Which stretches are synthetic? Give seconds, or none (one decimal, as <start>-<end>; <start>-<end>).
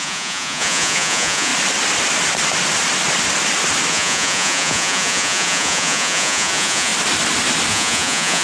0.0-1.5; 3.9-6.9; 7.7-8.4